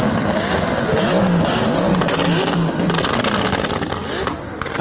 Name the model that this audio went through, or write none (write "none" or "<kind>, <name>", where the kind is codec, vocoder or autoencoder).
none